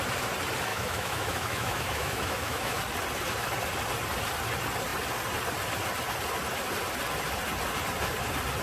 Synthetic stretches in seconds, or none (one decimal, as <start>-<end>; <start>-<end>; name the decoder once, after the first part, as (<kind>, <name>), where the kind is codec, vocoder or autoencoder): 0.7-2.8 (autoencoder, DAC-VAE)